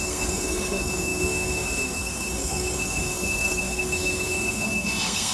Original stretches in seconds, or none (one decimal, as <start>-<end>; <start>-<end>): none